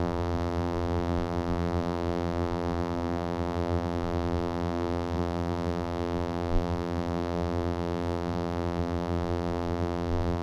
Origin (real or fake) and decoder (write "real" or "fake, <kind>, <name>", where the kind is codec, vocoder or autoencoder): fake, vocoder, BigVGAN v2